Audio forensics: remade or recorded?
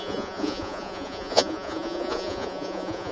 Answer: remade